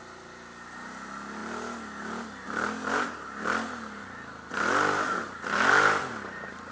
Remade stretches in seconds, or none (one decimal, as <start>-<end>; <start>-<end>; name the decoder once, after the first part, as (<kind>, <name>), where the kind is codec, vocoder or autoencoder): none